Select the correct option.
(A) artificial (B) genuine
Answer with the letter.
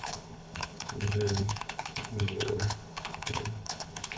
A